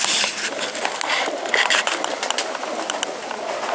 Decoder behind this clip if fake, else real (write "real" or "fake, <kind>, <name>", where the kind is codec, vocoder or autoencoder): real